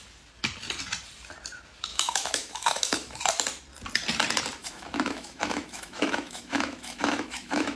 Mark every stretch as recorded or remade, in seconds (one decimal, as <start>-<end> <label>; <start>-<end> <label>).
0.0-1.9 recorded; 1.9-3.2 remade; 3.2-4.6 recorded; 4.6-7.8 remade